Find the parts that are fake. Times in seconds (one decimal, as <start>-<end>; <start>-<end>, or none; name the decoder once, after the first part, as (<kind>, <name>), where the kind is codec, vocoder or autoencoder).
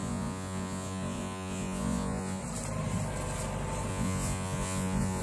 0.0-2.4 (vocoder, Vocos); 3.9-5.2